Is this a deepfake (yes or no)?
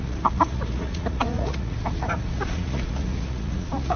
yes